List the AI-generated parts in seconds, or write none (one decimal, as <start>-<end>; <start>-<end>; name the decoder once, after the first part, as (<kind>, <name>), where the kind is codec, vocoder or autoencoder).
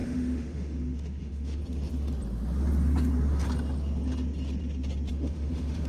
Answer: 0.0-1.6 (autoencoder, DAC-VAE); 5.1-5.9